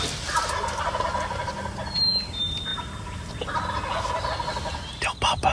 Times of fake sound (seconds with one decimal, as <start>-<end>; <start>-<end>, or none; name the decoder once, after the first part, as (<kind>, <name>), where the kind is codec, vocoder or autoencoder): none